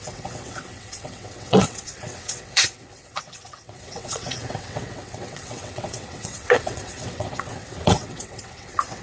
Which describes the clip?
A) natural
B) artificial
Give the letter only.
B